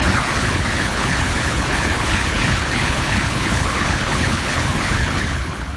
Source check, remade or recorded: remade